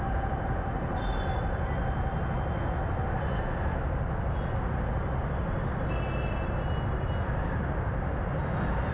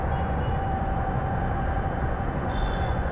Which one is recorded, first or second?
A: first